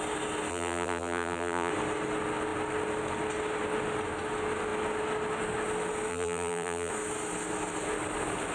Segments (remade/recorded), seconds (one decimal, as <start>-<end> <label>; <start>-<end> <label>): 0.0-0.5 recorded; 0.5-1.7 remade; 1.7-6.1 recorded; 6.1-6.9 remade; 6.9-8.5 recorded